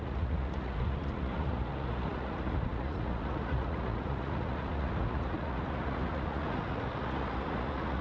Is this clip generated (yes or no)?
yes